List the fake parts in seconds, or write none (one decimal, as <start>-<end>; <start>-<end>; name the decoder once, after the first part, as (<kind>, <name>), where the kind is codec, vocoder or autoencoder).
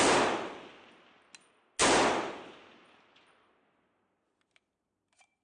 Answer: 1.8-2.3 (vocoder, BigVGAN v2)